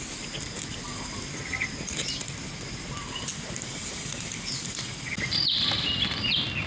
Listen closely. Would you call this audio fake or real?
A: real